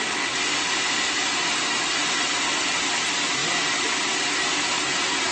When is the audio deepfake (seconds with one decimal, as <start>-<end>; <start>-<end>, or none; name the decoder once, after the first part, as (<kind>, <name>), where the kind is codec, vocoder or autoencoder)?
none